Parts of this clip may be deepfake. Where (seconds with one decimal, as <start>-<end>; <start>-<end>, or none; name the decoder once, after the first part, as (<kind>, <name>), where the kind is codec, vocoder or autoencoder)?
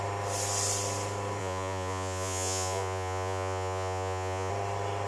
1.4-4.5 (vocoder, Vocos)